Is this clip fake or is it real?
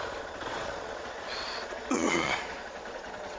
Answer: fake